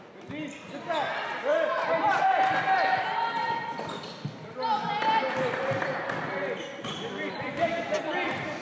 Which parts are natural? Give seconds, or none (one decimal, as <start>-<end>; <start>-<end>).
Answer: 0.0-8.6